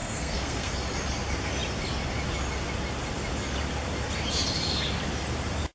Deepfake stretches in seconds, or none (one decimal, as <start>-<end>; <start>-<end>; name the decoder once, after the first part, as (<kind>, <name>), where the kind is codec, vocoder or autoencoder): 0.0-0.7 (codec, SNAC)